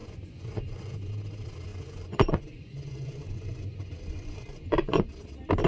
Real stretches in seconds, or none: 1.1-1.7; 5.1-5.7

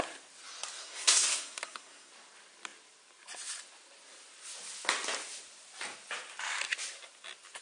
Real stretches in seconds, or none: 0.0-0.8; 2.1-7.6

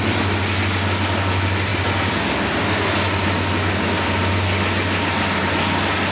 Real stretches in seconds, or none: 0.0-6.1

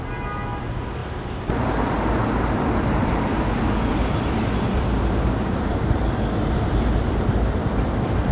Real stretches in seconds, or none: 0.0-1.0; 3.4-5.7; 7.0-8.3